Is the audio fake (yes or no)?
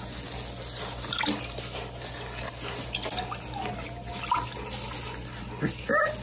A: no